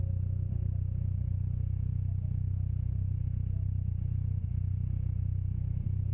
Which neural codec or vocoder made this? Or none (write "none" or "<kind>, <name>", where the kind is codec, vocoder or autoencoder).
none